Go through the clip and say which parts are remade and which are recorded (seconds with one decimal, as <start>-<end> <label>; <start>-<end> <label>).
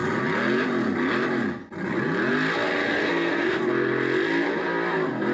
0.0-3.0 recorded; 3.0-3.6 remade; 3.6-5.3 recorded